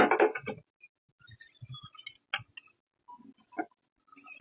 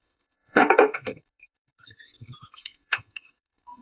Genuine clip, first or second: first